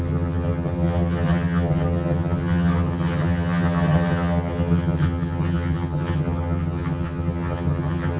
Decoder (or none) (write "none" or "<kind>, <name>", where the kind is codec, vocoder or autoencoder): vocoder, HiFi-GAN